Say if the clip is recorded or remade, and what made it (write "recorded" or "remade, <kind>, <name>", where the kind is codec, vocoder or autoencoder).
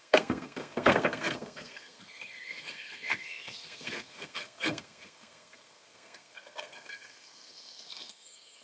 remade, codec, SNAC